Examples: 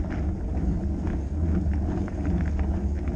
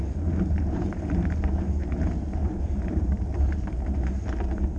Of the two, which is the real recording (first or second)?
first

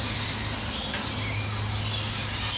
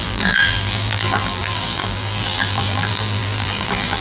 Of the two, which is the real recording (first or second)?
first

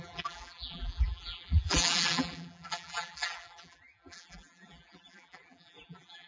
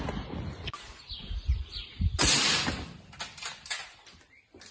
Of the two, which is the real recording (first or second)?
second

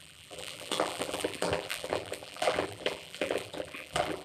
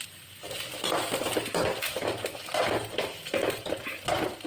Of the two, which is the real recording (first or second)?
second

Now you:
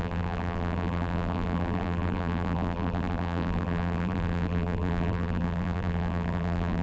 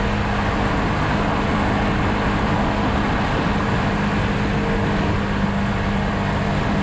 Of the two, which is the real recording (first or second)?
second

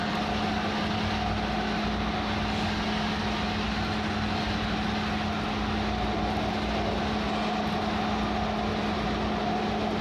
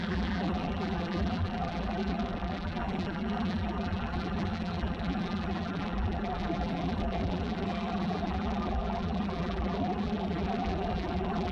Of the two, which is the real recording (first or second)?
first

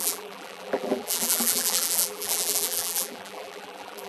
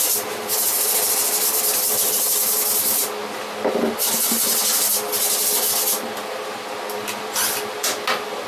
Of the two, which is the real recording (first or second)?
second